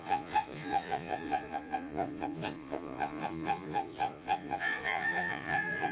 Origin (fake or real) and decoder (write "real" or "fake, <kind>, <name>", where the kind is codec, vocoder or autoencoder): fake, vocoder, Vocos